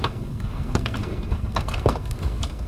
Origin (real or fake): fake